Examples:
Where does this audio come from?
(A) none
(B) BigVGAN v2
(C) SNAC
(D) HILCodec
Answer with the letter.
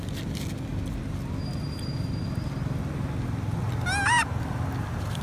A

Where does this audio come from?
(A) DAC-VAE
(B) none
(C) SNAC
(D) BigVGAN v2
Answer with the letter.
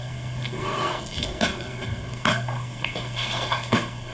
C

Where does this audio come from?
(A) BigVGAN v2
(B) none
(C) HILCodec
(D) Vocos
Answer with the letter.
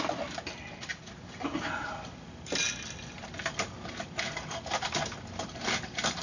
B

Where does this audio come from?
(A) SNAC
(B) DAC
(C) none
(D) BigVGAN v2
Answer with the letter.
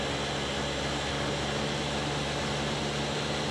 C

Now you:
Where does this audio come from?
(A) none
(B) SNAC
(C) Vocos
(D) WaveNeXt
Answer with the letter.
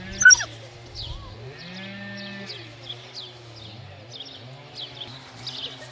A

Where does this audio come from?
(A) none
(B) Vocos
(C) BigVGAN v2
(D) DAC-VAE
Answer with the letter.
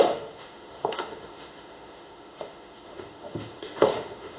D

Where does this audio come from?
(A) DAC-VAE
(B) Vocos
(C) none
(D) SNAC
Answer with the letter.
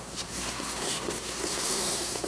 D